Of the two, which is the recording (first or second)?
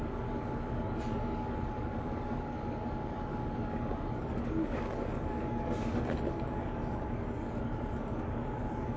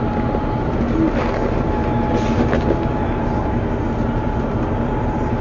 second